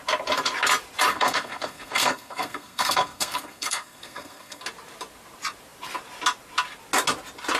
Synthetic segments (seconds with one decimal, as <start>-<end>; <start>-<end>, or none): 1.1-4.6